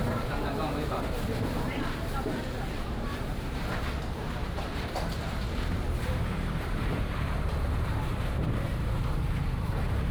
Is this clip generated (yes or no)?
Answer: yes